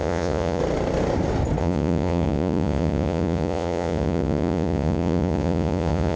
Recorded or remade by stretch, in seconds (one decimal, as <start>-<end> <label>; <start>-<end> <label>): 0.0-0.6 remade; 0.6-1.6 recorded; 1.6-6.2 remade